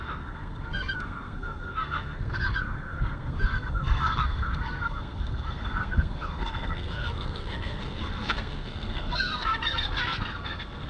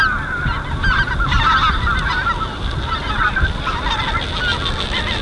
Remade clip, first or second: first